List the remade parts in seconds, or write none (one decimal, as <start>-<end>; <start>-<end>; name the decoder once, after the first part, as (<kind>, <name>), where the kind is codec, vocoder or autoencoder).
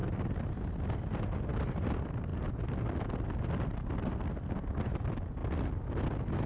0.8-2.3 (vocoder, BigVGAN v2); 4.6-5.4